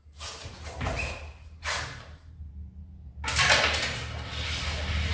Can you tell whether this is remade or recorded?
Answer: recorded